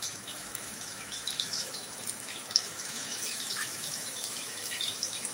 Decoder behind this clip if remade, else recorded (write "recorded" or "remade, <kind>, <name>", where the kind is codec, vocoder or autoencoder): remade, autoencoder, DAC-VAE